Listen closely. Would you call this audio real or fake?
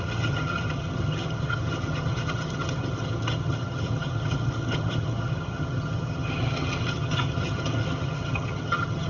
fake